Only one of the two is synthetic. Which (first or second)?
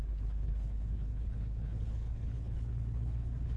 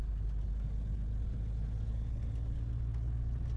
first